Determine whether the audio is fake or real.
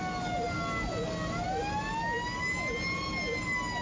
real